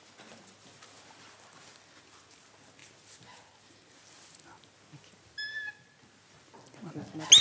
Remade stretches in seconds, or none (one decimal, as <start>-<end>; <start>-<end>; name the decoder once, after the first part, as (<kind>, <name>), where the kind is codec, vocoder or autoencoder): none